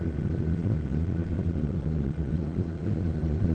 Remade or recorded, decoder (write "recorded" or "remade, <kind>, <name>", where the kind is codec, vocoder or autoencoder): remade, vocoder, Vocos